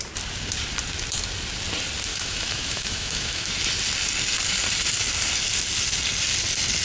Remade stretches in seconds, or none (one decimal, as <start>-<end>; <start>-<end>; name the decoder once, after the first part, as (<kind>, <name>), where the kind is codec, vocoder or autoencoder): 2.1-3.5 (autoencoder, DAC-VAE)

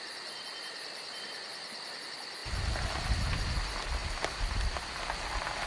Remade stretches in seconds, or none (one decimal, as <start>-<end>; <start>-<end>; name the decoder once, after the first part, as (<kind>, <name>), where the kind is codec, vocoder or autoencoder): none

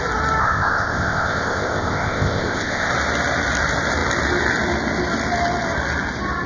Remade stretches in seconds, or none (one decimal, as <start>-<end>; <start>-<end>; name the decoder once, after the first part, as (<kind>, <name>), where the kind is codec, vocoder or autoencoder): 0.4-2.9 (codec, ZipCodec)

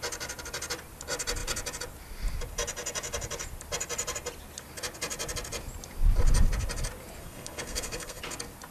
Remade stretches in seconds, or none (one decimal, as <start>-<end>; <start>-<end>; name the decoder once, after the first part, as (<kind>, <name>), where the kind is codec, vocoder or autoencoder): 7.2-8.2 (codec, SNAC)

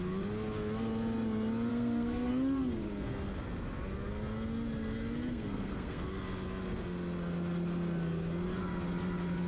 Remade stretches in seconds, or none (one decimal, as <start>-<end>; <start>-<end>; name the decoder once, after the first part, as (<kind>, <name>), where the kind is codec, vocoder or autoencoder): 1.7-2.3 (codec, SNAC); 5.3-6.0

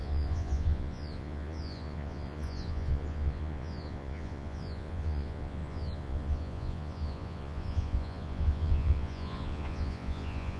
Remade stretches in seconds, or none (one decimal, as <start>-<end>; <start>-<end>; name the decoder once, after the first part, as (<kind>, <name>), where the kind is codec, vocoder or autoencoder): 0.0-10.6 (vocoder, Vocos)

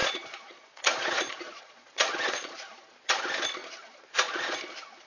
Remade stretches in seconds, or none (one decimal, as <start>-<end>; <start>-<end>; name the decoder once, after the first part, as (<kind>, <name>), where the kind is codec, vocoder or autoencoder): 0.0-3.1 (vocoder, Vocos); 3.6-4.6